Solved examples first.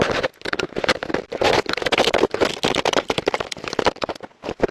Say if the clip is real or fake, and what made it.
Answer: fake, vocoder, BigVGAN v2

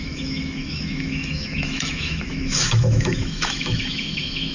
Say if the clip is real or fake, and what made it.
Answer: fake, autoencoder, DAC-VAE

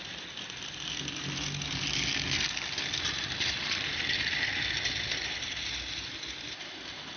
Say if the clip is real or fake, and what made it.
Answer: real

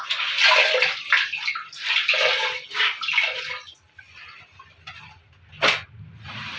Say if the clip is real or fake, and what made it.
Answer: fake, vocoder, BigVGAN v2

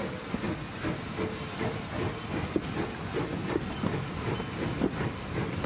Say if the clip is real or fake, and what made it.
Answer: real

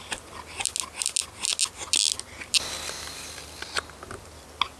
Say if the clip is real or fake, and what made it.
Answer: real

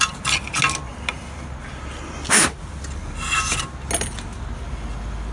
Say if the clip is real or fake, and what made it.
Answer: real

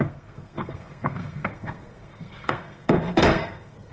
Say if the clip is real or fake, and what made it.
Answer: fake, codec, SNAC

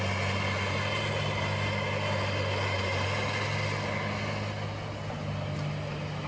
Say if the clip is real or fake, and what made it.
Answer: real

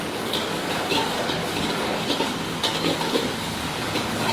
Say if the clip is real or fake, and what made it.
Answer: fake, codec, DAC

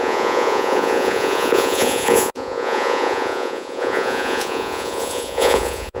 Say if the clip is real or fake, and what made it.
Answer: fake, vocoder, Vocos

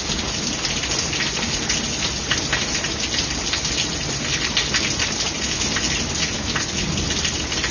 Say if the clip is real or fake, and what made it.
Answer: real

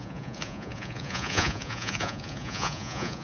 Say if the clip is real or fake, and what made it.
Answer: fake, vocoder, Vocos